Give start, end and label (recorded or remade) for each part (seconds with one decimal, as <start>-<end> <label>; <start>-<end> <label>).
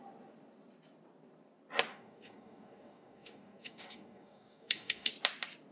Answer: 0.0-1.9 recorded; 1.9-5.1 remade; 5.1-5.7 recorded